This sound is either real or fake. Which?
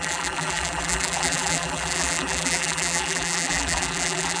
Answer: fake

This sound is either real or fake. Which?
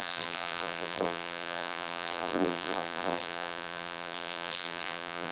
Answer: fake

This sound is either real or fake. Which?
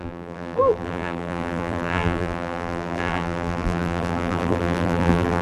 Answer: fake